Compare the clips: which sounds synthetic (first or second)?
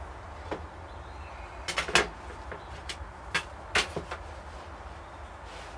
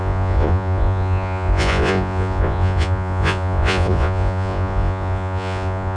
second